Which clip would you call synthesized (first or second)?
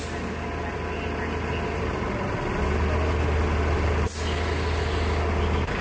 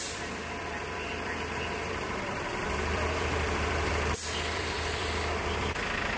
second